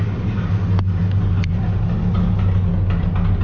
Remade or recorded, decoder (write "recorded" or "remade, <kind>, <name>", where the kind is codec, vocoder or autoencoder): recorded